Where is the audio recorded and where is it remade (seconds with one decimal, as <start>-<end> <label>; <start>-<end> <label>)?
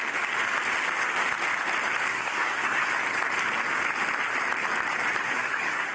0.0-2.1 recorded; 2.1-2.9 remade; 2.9-5.2 recorded; 5.2-5.9 remade